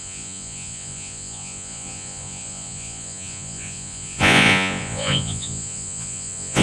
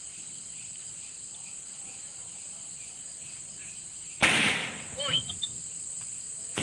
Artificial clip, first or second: first